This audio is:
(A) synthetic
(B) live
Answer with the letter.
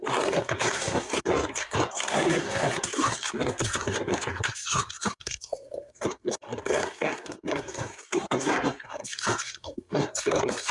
A